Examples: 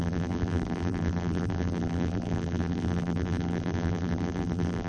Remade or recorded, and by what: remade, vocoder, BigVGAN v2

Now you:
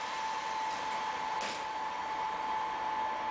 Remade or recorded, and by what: recorded